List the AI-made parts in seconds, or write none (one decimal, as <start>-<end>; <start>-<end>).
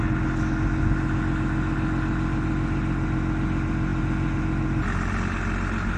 none